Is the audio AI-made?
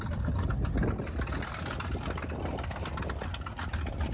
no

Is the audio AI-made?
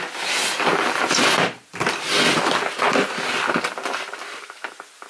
no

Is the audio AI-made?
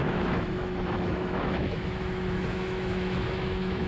yes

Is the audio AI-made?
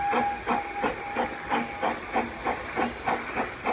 no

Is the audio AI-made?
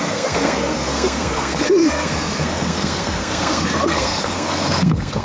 yes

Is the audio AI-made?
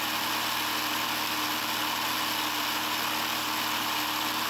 no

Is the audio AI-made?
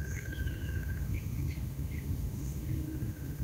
yes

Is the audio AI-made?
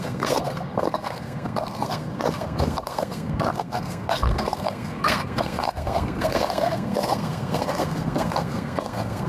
yes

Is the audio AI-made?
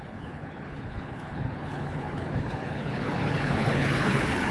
yes